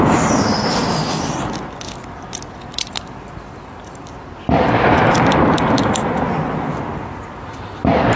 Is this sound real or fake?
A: real